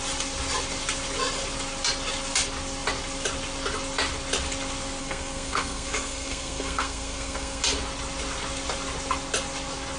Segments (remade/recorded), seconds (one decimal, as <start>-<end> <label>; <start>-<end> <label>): 0.0-5.0 recorded; 5.0-7.6 remade; 7.6-10.0 recorded